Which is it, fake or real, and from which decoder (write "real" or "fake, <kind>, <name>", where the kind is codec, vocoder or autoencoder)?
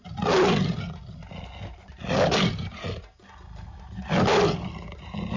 real